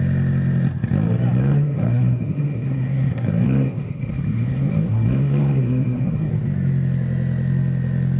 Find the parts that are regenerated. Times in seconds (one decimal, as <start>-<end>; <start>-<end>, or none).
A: 1.4-6.3